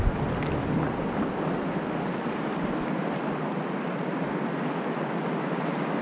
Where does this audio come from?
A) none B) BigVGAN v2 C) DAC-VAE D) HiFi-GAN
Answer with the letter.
A